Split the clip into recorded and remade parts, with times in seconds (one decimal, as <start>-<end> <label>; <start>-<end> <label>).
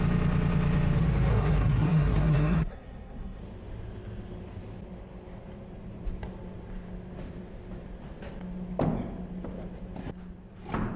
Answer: 0.0-1.3 recorded; 1.3-3.4 remade; 3.4-11.0 recorded